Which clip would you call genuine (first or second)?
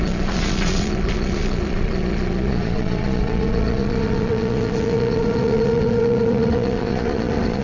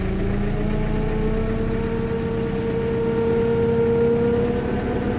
second